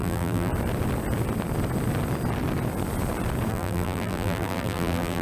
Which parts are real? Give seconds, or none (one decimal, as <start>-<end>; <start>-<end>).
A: 0.5-3.5